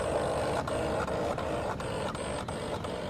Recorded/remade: recorded